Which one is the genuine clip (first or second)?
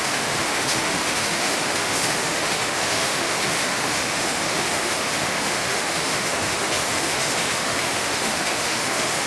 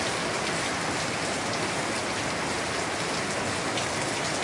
second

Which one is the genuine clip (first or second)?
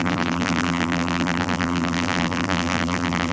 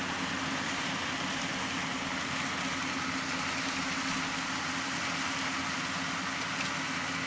second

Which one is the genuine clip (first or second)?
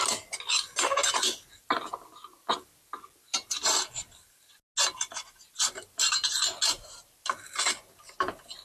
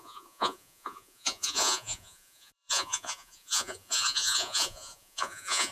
first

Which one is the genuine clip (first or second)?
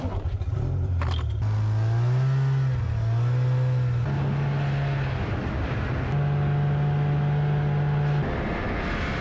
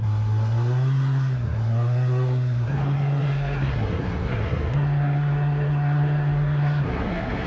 first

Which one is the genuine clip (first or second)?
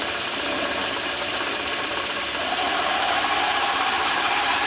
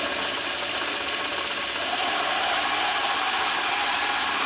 second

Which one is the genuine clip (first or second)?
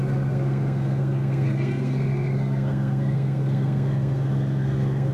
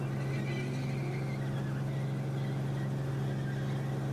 second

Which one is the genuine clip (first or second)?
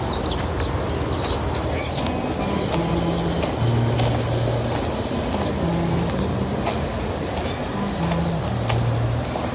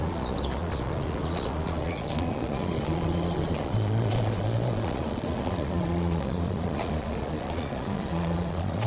first